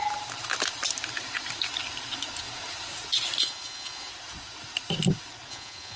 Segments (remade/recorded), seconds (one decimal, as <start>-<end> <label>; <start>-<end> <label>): 0.0-3.4 recorded; 3.4-4.1 remade; 4.1-5.5 recorded; 5.5-6.0 remade